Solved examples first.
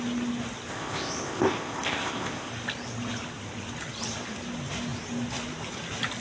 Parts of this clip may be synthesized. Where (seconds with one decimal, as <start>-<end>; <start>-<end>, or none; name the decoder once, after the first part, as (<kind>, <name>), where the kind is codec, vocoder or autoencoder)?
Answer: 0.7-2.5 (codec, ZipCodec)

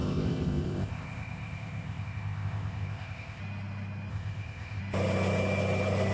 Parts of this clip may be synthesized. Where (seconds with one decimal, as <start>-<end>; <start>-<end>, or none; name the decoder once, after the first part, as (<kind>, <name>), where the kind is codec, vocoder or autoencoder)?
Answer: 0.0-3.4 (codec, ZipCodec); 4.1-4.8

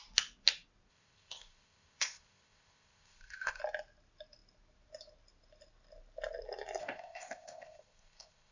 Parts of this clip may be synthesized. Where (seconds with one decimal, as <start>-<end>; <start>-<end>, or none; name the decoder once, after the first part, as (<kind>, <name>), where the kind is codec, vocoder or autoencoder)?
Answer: 0.9-3.6 (codec, ZipCodec); 6.8-8.5